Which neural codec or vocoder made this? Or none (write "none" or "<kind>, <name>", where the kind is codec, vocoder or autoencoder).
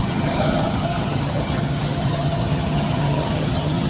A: vocoder, HiFi-GAN